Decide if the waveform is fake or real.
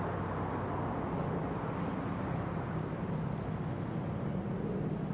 real